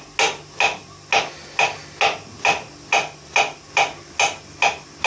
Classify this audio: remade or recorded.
recorded